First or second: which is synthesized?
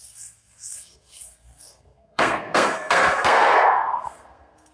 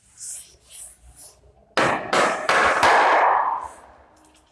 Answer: first